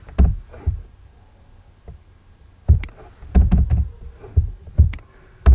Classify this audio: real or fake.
real